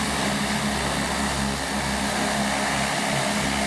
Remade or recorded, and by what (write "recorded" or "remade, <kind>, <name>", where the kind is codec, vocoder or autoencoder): recorded